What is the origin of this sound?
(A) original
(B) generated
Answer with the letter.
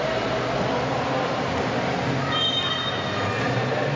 A